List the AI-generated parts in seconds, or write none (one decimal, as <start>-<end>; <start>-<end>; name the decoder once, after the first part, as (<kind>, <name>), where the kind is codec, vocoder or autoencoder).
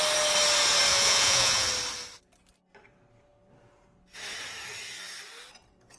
0.9-1.7 (vocoder, Vocos)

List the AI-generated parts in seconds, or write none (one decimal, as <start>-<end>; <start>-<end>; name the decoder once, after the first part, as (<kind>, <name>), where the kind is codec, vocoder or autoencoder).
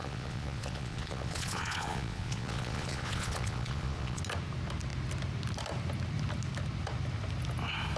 0.0-4.2 (vocoder, Vocos)